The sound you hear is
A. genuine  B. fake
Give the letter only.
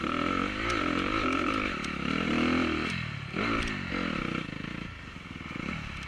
A